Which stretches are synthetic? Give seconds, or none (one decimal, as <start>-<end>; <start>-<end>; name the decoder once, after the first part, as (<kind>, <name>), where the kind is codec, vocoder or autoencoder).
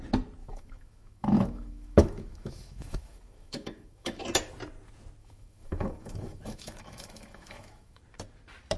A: 0.4-4.2 (autoencoder, DAC-VAE); 5.2-8.0